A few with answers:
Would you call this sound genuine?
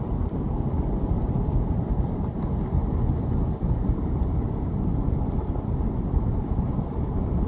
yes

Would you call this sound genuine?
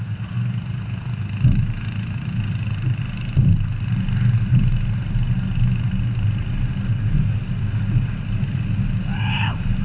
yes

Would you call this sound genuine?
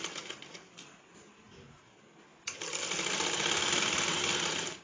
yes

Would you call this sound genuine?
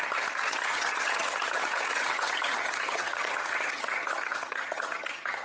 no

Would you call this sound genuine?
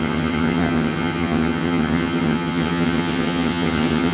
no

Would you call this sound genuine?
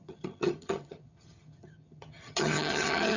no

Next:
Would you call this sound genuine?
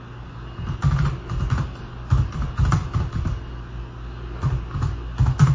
yes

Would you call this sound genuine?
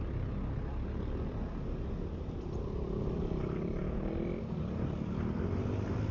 yes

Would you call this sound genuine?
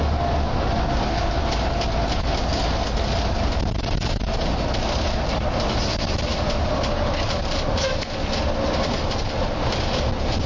yes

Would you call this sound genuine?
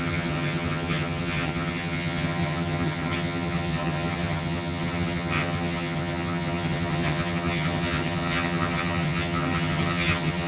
no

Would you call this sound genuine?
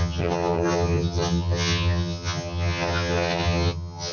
no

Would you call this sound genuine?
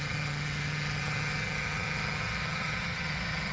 no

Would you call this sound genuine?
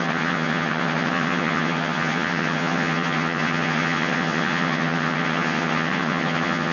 no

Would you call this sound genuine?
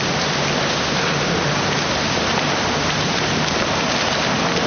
yes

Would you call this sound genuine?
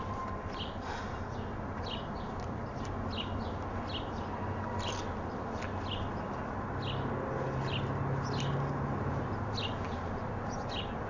yes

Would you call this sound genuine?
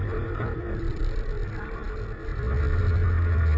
yes